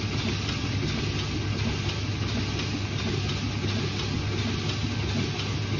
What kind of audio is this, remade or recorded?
recorded